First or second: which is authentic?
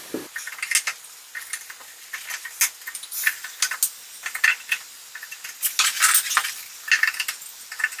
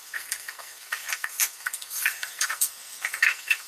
first